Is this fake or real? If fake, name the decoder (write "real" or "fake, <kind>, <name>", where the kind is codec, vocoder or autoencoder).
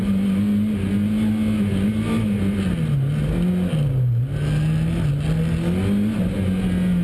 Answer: real